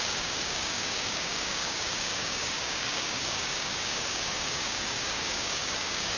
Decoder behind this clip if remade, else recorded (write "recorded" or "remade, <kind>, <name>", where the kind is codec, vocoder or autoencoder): remade, codec, DAC